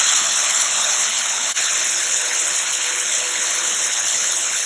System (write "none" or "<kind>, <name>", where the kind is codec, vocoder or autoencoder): codec, HILCodec